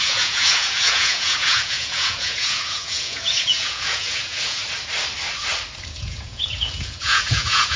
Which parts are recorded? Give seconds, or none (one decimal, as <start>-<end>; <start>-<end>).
4.6-5.9